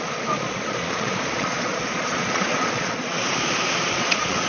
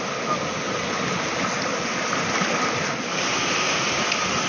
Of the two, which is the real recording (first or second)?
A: second